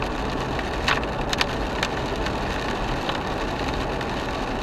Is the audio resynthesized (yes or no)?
no